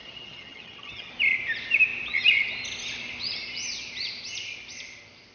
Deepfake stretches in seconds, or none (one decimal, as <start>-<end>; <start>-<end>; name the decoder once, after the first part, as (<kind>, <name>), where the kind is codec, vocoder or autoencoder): 0.0-1.1 (vocoder, HiFi-GAN)